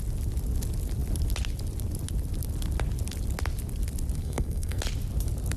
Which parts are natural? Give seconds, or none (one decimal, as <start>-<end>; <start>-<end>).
0.0-4.2; 4.8-5.6